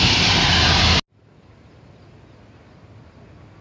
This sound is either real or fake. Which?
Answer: real